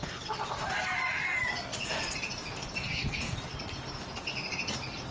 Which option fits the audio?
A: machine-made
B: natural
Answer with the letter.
B